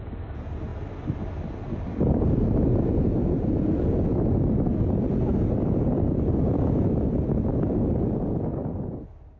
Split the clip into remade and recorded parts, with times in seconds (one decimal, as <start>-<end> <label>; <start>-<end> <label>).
0.0-9.4 recorded